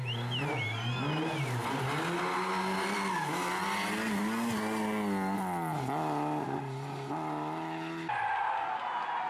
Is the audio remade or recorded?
recorded